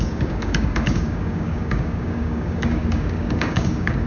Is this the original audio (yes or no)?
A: no